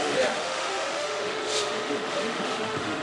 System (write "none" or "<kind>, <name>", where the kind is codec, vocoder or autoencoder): autoencoder, DAC-VAE